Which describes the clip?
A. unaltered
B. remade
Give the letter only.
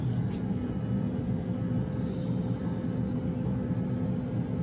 A